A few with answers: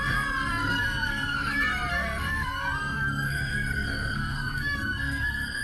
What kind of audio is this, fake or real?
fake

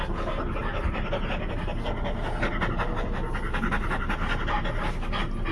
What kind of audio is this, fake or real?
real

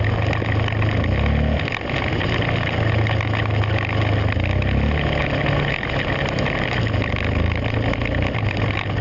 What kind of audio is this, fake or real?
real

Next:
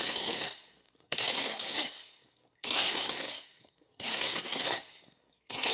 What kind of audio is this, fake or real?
fake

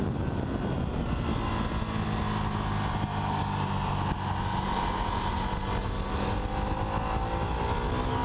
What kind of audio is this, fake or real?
real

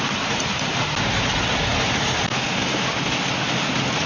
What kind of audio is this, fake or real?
real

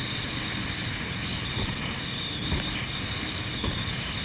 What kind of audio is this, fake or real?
real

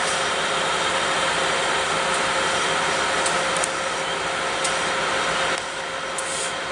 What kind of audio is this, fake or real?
real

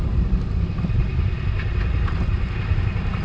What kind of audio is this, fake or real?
real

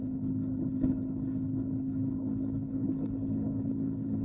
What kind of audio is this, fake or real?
fake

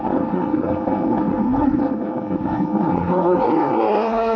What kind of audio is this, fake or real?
fake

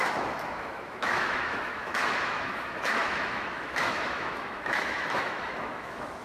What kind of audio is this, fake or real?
fake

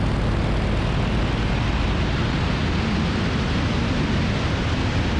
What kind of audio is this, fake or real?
real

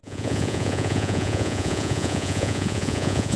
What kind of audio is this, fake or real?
fake